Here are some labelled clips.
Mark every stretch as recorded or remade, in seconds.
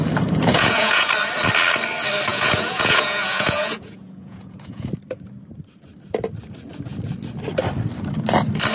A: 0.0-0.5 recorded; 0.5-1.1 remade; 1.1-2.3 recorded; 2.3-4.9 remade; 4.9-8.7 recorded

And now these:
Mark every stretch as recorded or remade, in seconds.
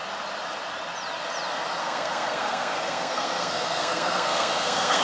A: 0.0-1.8 recorded; 1.8-5.0 remade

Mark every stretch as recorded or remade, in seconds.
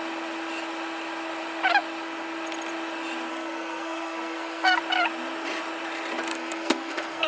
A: 0.0-3.3 recorded; 3.3-4.8 remade; 4.8-6.3 recorded; 6.3-7.3 remade